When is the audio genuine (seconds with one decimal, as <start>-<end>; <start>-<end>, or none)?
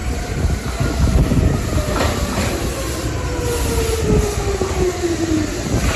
0.0-6.0